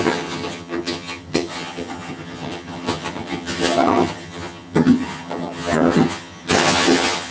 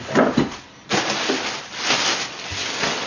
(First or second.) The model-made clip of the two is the first